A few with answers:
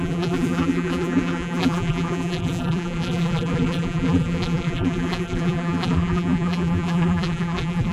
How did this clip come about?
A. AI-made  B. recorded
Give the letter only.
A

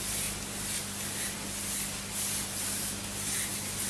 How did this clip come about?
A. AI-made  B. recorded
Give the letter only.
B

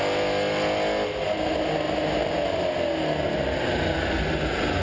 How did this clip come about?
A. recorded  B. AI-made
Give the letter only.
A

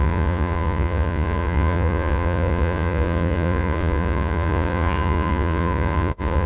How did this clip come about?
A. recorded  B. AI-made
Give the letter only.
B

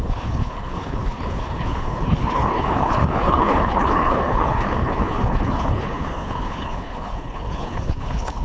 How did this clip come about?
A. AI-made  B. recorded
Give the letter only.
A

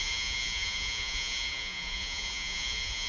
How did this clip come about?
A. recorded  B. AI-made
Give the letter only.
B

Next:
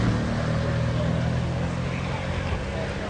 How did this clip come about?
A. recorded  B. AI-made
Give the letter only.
A